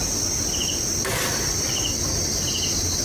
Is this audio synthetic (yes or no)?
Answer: no